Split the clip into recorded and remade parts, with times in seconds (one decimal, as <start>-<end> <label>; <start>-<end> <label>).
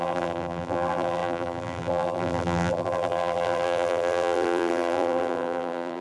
0.0-6.0 remade